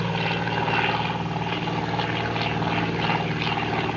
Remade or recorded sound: recorded